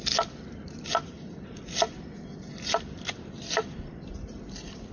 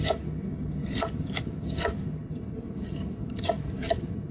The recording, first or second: first